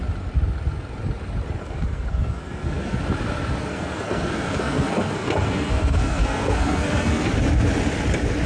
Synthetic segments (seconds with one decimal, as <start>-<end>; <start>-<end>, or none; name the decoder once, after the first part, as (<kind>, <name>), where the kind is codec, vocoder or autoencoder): 1.6-3.0 (codec, SNAC); 3.6-7.3